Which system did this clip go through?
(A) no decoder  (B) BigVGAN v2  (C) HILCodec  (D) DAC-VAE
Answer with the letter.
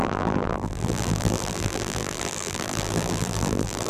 B